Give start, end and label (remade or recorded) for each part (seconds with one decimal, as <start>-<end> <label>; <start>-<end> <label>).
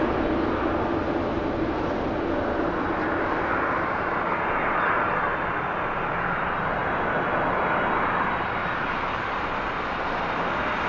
0.0-10.9 recorded